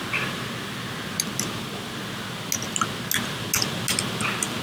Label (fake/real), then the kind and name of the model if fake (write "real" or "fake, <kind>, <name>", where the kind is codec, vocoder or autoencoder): real